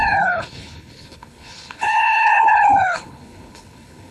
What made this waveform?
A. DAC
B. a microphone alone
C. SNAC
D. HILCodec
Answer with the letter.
D